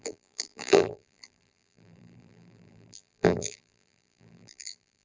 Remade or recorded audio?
remade